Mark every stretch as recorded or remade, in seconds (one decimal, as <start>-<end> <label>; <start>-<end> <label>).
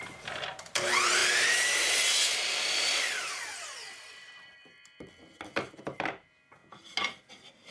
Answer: 0.0-1.2 remade; 1.2-4.1 recorded; 4.1-6.6 remade; 6.6-7.3 recorded; 7.3-7.7 remade